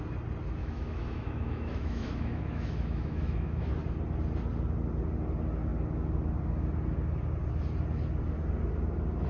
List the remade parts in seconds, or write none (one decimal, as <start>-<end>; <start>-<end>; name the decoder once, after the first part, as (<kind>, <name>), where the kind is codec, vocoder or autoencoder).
0.6-3.7 (autoencoder, DAC-VAE)